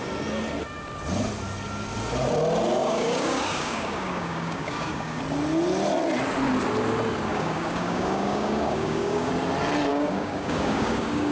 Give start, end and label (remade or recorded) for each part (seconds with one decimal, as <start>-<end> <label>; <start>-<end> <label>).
0.0-2.8 recorded; 2.8-5.2 remade; 5.2-7.3 recorded; 7.3-9.3 remade; 9.3-9.9 recorded; 9.9-11.3 remade